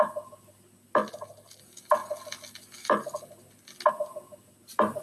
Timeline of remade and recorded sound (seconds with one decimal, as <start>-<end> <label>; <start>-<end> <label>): 0.0-5.0 recorded